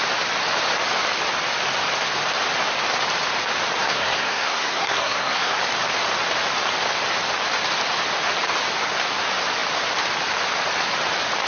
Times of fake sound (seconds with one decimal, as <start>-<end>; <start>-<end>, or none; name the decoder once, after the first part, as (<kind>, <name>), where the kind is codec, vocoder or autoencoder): 3.8-5.6 (codec, SNAC)